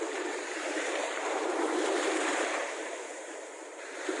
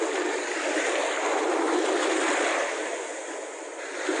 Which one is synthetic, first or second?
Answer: first